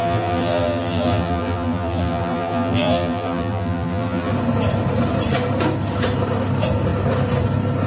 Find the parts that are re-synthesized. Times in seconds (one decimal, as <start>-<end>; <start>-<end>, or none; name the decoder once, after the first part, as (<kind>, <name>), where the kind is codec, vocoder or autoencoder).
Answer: 0.0-4.3 (vocoder, BigVGAN v2)